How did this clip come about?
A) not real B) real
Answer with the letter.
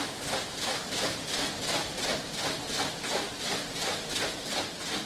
B